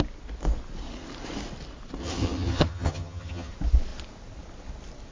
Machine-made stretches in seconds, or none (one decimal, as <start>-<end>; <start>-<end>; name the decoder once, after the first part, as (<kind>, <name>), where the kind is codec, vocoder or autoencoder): 2.0-3.5 (vocoder, HiFi-GAN)